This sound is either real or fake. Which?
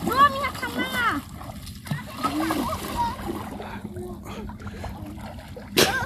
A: real